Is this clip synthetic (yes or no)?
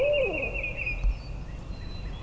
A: no